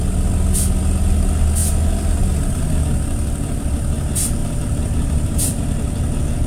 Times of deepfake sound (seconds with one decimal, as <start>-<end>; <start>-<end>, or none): 4.4-5.6